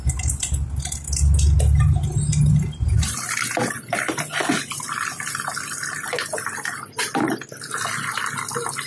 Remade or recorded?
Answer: recorded